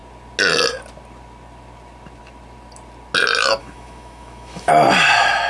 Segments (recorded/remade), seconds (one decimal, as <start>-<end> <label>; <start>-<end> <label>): 0.0-3.6 recorded; 3.6-4.7 remade; 4.7-5.5 recorded